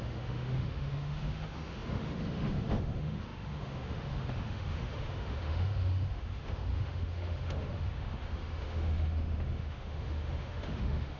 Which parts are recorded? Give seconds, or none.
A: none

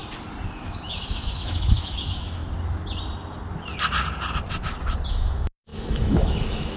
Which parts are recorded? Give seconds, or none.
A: 0.0-0.5; 2.4-5.1

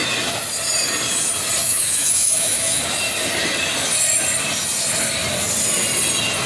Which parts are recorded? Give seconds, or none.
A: 0.0-1.6; 2.8-6.5

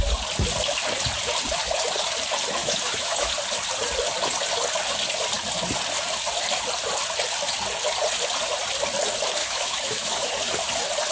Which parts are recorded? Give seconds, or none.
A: 0.0-2.6; 3.3-9.4; 10.3-11.1

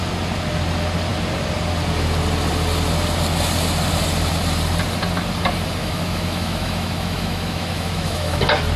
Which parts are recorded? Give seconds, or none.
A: 0.0-5.8; 8.4-8.8